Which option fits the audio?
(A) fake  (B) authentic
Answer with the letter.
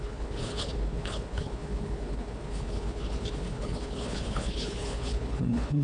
A